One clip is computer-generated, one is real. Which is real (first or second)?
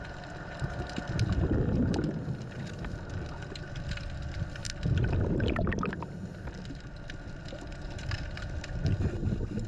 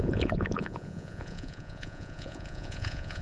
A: first